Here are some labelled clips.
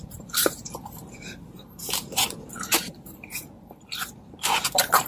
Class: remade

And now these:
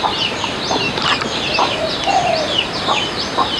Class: remade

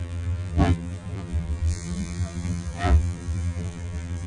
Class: remade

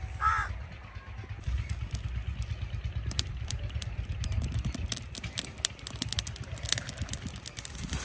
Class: recorded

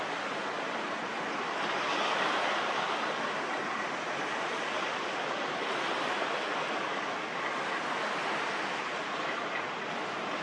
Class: recorded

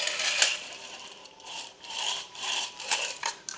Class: remade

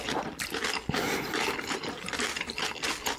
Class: remade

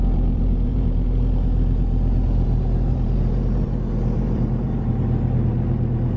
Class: remade